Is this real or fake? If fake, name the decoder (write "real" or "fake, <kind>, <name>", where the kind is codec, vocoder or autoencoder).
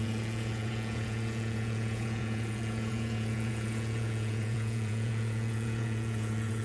fake, vocoder, Vocos